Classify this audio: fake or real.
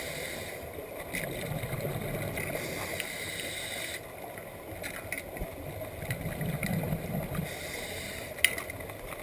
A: real